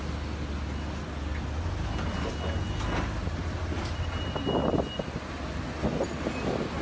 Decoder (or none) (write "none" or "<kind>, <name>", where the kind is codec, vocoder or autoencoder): none